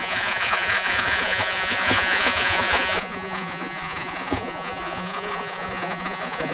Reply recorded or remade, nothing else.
remade